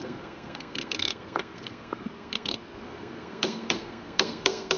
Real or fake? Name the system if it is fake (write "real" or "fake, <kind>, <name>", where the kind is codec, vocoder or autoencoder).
fake, codec, SNAC